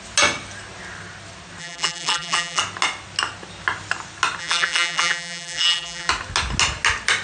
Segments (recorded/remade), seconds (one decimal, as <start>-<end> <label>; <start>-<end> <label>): 0.0-1.6 recorded; 1.6-2.6 remade; 2.6-4.4 recorded; 4.4-6.1 remade; 6.1-7.2 recorded